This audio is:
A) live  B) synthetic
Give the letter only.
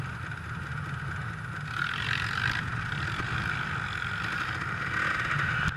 A